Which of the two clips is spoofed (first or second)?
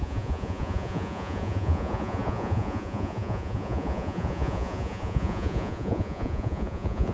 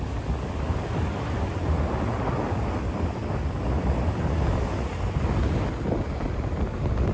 first